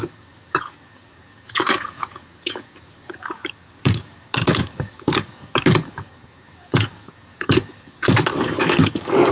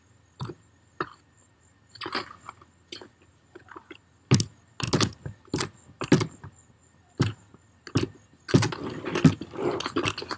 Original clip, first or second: second